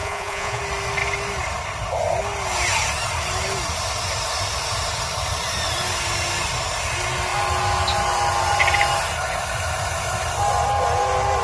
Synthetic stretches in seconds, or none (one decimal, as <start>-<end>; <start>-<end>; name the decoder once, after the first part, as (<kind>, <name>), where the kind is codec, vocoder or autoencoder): 0.0-0.6 (vocoder, Vocos)